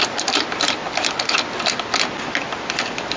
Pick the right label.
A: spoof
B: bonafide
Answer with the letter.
B